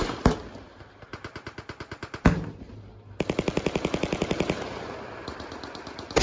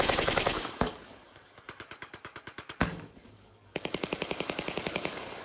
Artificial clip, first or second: second